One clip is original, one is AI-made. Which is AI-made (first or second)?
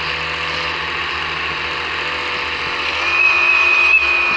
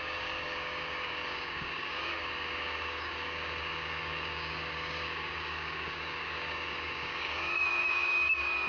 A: second